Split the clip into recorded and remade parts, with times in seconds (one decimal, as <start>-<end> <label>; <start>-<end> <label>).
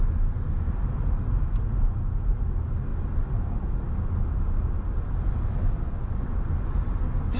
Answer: 0.0-7.4 recorded